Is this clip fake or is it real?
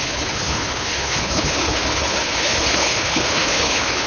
fake